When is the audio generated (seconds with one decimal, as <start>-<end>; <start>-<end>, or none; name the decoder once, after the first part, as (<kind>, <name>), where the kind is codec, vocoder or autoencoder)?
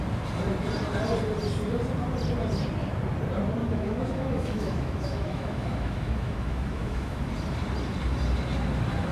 3.6-7.3 (autoencoder, DAC-VAE)